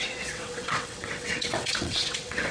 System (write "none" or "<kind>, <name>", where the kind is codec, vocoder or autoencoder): vocoder, WaveNeXt